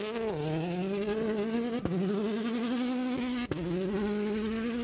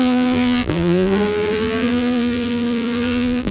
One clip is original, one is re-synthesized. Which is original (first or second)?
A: first